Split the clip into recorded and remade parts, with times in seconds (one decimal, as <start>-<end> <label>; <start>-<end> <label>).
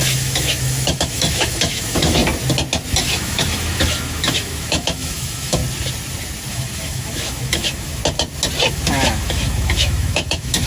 0.0-2.2 remade; 2.2-3.0 recorded; 3.0-5.6 remade; 5.6-6.5 recorded; 6.5-8.0 remade; 8.0-8.7 recorded; 8.7-10.7 remade